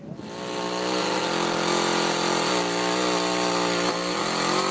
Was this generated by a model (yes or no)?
no